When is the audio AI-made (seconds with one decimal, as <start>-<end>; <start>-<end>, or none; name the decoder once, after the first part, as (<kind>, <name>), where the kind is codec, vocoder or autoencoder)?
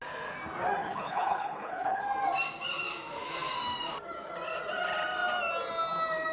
0.8-2.0 (codec, HILCodec)